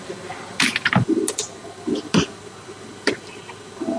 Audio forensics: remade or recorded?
recorded